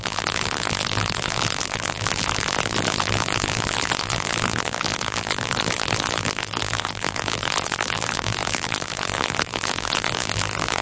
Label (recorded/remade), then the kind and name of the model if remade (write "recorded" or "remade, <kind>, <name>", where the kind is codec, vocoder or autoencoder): remade, vocoder, BigVGAN v2